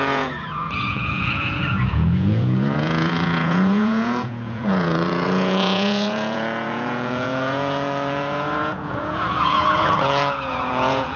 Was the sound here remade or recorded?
remade